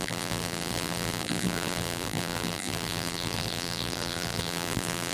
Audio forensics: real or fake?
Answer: fake